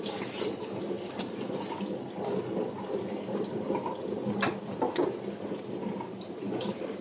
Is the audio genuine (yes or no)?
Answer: yes